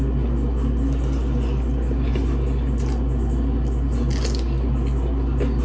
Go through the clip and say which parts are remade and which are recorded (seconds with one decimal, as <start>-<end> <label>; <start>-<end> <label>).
0.0-5.6 recorded